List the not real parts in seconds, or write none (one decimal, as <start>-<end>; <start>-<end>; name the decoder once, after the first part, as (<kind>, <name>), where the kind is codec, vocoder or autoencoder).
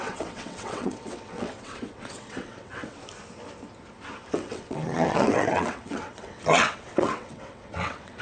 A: 0.0-3.0 (vocoder, WaveNeXt); 4.3-8.2